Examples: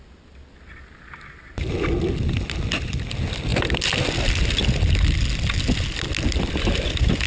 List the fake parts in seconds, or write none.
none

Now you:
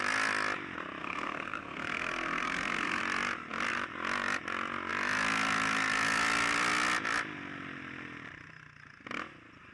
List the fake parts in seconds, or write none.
1.0-3.0